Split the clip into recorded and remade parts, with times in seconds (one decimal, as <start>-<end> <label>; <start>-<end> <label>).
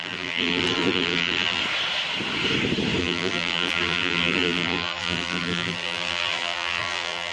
0.0-1.6 remade; 1.6-3.0 recorded; 3.0-7.3 remade